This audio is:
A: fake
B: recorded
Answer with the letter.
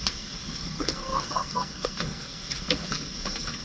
A